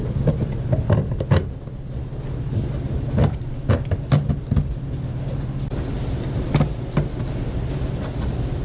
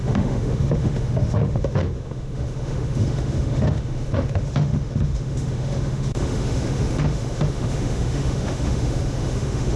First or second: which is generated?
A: second